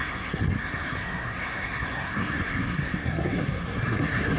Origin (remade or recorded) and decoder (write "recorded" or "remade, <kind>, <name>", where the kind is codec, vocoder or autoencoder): remade, codec, SNAC